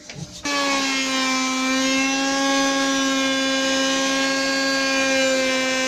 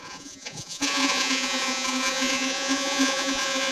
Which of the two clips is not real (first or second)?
second